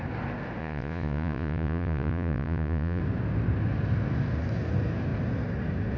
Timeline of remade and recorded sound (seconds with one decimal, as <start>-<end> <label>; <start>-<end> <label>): 0.0-0.6 recorded; 0.6-3.0 remade; 3.0-6.0 recorded